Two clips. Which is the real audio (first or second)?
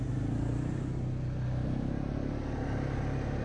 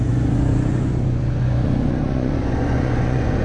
first